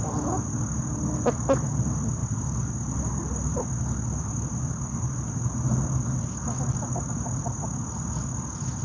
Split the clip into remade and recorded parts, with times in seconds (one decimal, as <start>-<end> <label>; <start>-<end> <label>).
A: 0.0-8.8 recorded